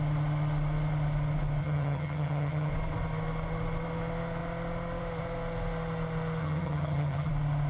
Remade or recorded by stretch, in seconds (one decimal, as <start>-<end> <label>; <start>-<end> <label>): 0.0-1.6 recorded; 1.6-2.7 remade; 2.7-6.4 recorded; 6.4-7.3 remade; 7.3-7.7 recorded

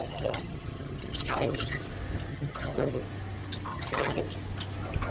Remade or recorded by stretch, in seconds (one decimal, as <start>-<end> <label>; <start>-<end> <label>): 0.0-1.8 remade; 1.8-2.3 recorded; 2.3-3.0 remade; 3.0-3.7 recorded; 3.7-4.2 remade; 4.2-5.1 recorded

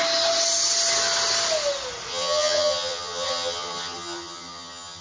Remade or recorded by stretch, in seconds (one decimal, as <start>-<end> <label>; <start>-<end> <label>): 0.0-2.1 recorded; 2.1-5.0 remade